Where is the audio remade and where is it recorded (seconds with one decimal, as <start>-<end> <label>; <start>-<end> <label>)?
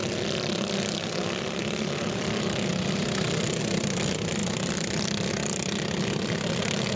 0.0-7.0 remade